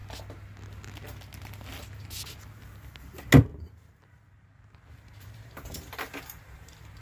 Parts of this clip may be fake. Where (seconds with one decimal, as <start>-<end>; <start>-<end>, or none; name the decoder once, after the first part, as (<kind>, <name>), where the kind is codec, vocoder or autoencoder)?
3.5-7.0 (vocoder, BigVGAN v2)